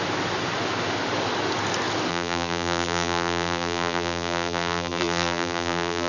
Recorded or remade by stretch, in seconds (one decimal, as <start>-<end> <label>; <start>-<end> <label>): 0.0-2.1 recorded; 2.1-6.1 remade